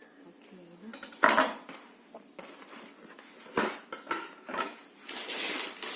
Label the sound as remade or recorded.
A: recorded